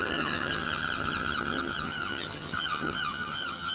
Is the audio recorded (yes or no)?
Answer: no